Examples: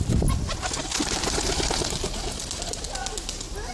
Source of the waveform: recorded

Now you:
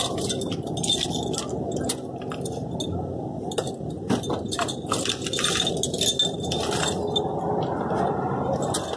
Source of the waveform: recorded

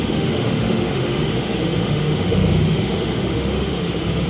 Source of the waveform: remade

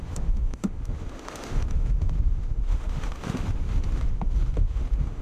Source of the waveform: remade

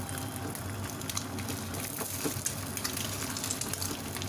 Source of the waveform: recorded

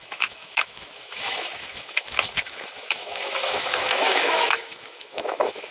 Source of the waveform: remade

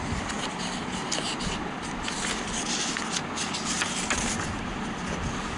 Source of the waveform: recorded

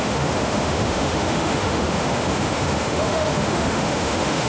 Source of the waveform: remade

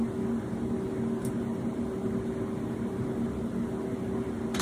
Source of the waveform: recorded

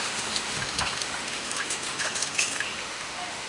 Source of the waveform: remade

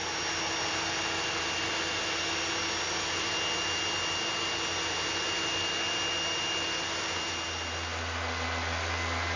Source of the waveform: recorded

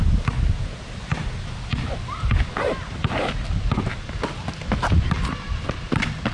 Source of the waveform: recorded